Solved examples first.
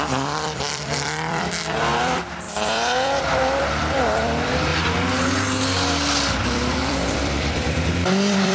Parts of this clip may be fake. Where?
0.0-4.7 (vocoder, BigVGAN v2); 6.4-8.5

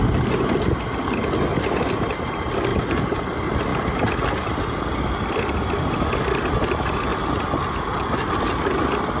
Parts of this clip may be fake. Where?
2.7-3.2 (vocoder, BigVGAN v2)

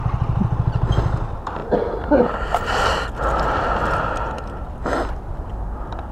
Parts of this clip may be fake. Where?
none

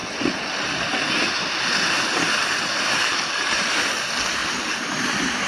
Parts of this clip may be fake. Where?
2.4-3.9 (vocoder, BigVGAN v2); 4.4-5.0

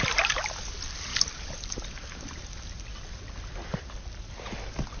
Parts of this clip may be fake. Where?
1.1-3.8 (vocoder, BigVGAN v2)

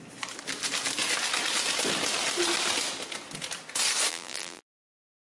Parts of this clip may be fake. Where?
4.1-5.3 (vocoder, BigVGAN v2)

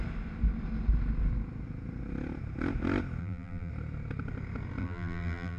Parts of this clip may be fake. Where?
3.2-3.7 (vocoder, BigVGAN v2); 4.8-5.6